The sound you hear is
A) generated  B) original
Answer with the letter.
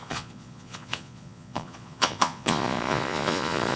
A